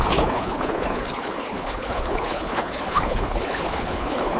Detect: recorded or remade remade